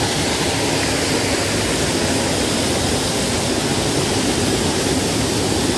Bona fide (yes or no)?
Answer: yes